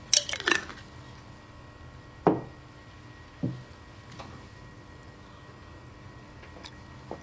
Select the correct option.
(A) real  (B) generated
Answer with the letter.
A